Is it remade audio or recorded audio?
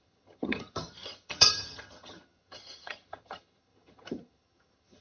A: remade